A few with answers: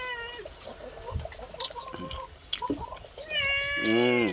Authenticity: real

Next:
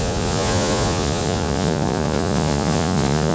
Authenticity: fake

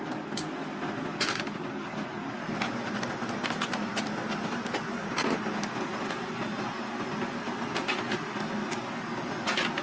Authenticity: real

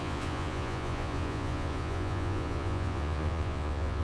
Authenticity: fake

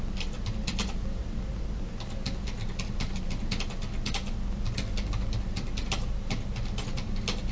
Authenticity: real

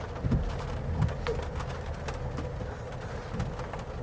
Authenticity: real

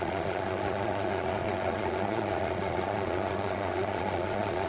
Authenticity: fake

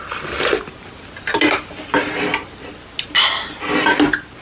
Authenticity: real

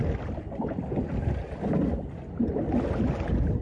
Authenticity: real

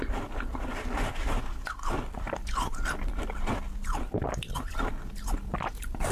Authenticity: real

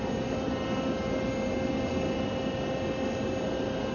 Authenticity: real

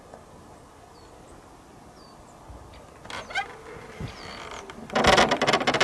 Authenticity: real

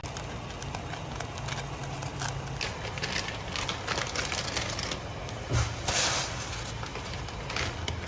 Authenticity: real